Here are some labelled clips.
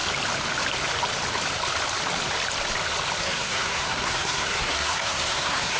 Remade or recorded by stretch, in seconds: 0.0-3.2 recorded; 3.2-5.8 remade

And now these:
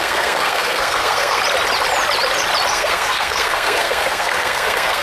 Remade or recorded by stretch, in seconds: 0.0-1.4 remade; 1.4-2.7 recorded; 2.7-5.0 remade